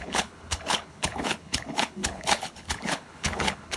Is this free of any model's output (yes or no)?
no